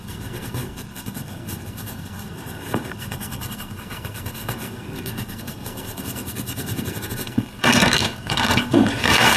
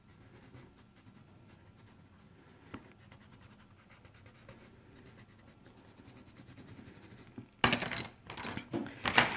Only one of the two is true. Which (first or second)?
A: second